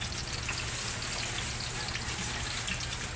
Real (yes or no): yes